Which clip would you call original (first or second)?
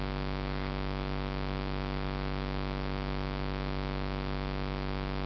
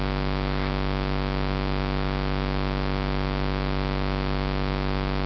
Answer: second